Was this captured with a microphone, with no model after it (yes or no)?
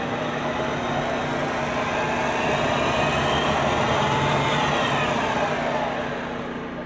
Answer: yes